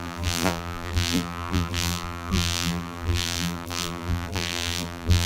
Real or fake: fake